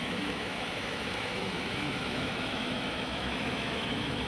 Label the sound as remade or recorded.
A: remade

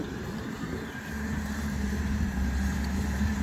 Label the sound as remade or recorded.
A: remade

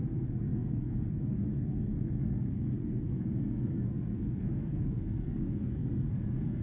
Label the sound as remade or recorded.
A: remade